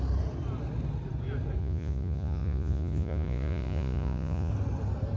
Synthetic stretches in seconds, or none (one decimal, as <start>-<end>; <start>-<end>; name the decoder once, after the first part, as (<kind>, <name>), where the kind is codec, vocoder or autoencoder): 1.6-4.5 (vocoder, Vocos)